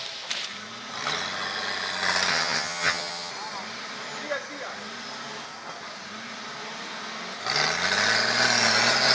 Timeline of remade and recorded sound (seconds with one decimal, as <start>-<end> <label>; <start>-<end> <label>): 0.0-2.3 recorded; 2.3-3.3 remade; 3.3-9.1 recorded